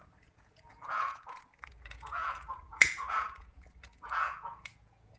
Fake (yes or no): yes